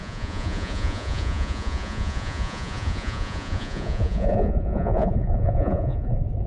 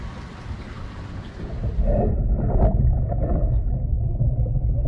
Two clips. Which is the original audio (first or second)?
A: second